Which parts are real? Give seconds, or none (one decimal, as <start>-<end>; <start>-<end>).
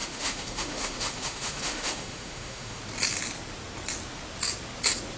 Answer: 2.8-5.2